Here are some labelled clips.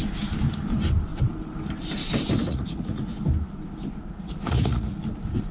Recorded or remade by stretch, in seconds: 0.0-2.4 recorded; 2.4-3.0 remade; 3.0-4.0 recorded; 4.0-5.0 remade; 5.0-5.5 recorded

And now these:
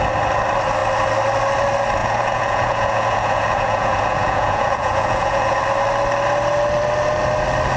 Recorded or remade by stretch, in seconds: 0.0-2.0 recorded; 2.0-5.6 remade; 5.6-7.8 recorded

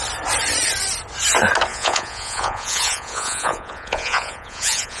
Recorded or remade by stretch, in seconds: 0.0-1.7 recorded; 1.7-5.0 remade